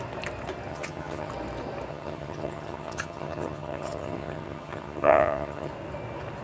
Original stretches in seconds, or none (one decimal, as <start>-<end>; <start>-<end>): 0.0-0.7; 1.3-1.9; 5.7-6.4